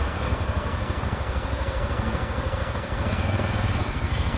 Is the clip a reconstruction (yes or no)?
yes